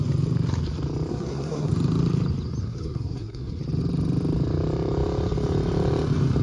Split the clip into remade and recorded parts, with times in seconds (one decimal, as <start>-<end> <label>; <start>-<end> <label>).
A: 0.0-1.1 recorded; 1.1-1.7 remade; 1.7-2.6 recorded; 2.6-3.6 remade; 3.6-6.4 recorded